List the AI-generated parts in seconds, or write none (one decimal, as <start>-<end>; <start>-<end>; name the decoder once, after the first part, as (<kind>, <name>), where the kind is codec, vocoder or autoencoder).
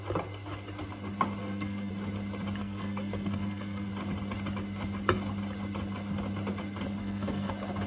1.4-1.9 (codec, SNAC); 2.6-3.9; 7.0-7.5